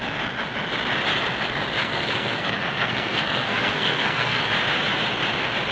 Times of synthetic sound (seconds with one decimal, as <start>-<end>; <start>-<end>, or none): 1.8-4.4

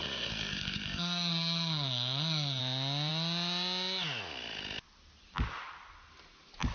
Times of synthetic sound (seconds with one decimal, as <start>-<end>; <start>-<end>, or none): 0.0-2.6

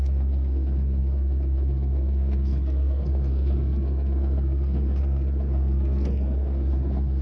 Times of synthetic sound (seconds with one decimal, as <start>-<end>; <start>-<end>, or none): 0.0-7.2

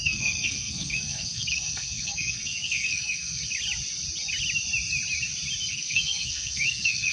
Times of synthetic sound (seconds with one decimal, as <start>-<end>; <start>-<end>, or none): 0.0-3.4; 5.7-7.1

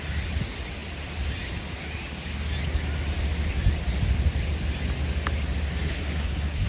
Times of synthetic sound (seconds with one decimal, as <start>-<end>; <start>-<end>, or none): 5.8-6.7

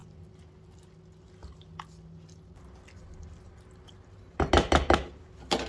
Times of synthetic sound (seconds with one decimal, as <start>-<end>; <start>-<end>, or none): none

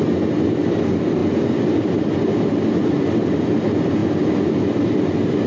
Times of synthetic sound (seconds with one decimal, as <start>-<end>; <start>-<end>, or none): none

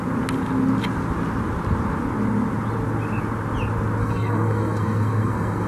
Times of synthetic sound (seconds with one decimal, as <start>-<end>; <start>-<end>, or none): 4.0-5.7